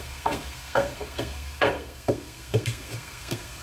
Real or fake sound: fake